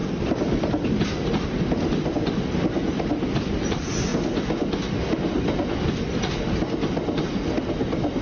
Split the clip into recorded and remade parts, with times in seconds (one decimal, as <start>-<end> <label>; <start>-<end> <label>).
0.0-8.2 recorded